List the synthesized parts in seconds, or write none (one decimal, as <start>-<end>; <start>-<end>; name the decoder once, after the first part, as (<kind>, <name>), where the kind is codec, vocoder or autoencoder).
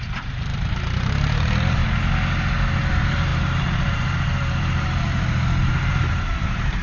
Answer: 0.0-1.8 (vocoder, BigVGAN v2); 2.9-6.8